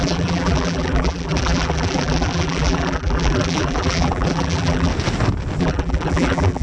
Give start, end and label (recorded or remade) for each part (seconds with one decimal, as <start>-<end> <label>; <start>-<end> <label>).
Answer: 0.0-4.9 remade; 4.9-5.6 recorded; 5.6-6.6 remade